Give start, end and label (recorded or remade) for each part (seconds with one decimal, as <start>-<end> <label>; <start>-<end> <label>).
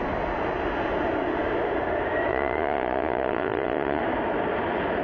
0.0-2.3 recorded; 2.3-4.0 remade; 4.0-5.0 recorded